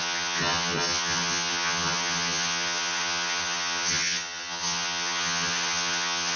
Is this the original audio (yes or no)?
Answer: no